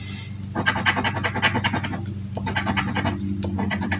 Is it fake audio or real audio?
real